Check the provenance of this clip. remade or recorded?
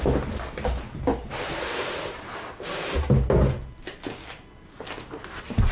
recorded